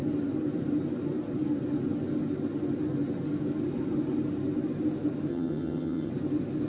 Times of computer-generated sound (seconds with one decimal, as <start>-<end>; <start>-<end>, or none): 5.3-6.1